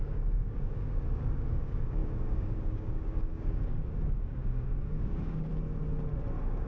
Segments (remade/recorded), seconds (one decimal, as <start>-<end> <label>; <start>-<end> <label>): 0.0-5.5 remade; 5.5-6.7 recorded